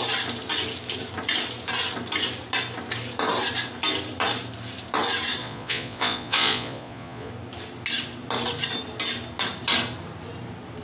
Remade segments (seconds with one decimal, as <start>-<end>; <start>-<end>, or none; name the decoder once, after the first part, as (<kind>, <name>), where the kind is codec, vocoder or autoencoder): 5.4-7.3 (vocoder, Vocos)

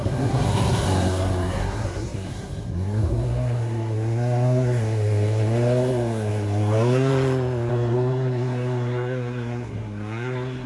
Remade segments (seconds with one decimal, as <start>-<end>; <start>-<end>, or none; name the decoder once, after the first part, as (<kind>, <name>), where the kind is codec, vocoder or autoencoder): 0.0-7.1 (codec, SNAC); 7.7-10.7

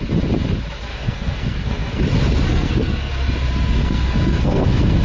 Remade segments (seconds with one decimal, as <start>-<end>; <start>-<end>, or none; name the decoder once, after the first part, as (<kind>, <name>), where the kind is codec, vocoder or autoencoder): 0.9-2.0 (codec, SNAC); 2.5-3.1; 3.8-5.0

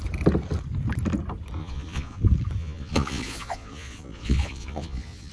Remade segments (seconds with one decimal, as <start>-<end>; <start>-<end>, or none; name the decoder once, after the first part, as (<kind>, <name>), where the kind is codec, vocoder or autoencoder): 1.6-2.2 (vocoder, Vocos); 2.6-5.3

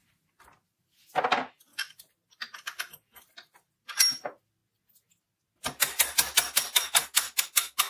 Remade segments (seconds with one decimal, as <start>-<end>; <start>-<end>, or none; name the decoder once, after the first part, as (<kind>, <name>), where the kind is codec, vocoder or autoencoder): none